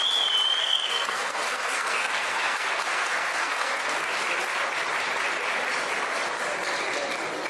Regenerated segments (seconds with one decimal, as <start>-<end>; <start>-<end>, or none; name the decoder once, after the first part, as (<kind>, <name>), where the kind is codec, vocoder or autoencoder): 0.6-4.1 (codec, SNAC)